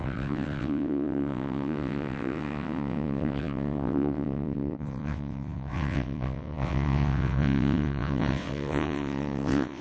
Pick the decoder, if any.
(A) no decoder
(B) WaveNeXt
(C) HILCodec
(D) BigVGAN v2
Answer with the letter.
B